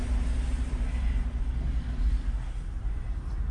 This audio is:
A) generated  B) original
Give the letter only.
B